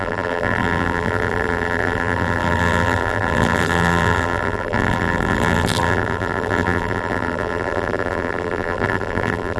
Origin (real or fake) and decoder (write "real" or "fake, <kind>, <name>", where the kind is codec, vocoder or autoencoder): fake, vocoder, BigVGAN v2